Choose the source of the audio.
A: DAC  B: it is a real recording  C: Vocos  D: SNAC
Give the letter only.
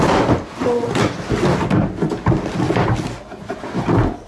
B